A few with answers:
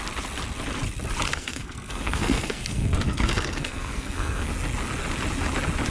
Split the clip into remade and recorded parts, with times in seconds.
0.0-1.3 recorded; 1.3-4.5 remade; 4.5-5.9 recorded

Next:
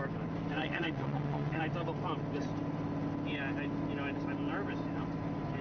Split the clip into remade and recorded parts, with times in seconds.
0.0-0.6 recorded; 0.6-1.6 remade; 1.6-5.6 recorded

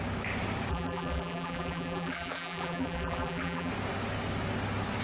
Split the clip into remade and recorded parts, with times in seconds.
0.0-0.7 recorded; 0.7-3.7 remade; 3.7-5.0 recorded

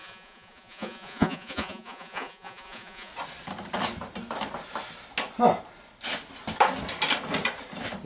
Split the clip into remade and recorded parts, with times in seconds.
0.0-3.1 remade; 3.1-8.1 recorded

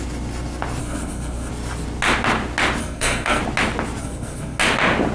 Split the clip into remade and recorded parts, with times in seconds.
0.0-0.8 recorded; 0.8-1.5 remade; 1.5-2.8 recorded; 2.8-3.4 remade; 3.4-4.0 recorded; 4.0-4.6 remade; 4.6-5.1 recorded